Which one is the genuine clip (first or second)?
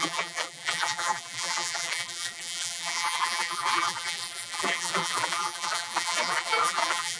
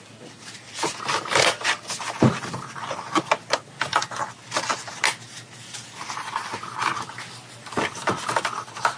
second